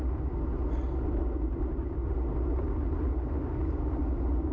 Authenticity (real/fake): real